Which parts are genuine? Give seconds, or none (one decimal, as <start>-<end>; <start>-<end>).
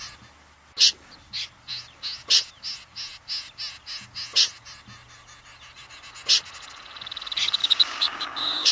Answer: 0.0-7.6